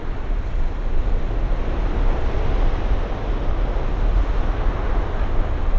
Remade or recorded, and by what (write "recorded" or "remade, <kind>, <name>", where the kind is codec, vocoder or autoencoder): recorded